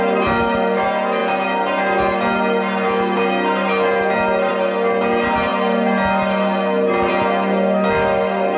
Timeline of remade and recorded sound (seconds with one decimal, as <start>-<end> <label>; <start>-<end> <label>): 0.0-8.6 recorded